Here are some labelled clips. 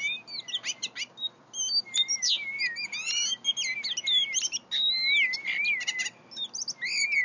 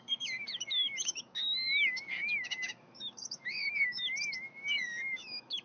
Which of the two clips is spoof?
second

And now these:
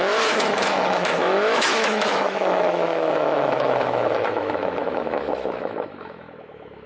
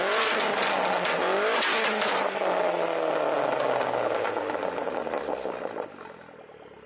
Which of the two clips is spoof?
first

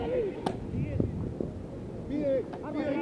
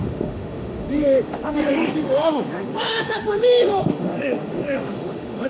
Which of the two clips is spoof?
second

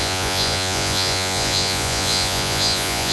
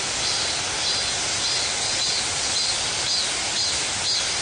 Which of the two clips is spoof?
first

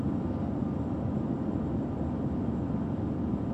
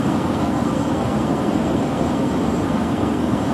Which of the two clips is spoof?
second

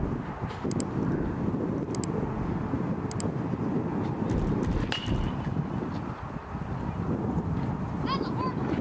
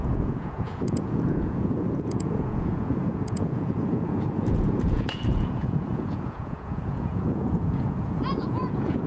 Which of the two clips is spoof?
second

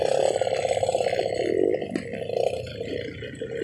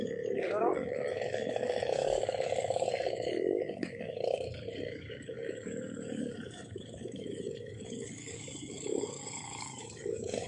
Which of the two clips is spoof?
second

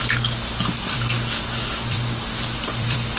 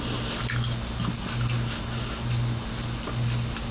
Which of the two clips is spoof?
first